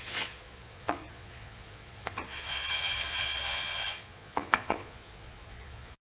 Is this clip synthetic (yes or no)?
yes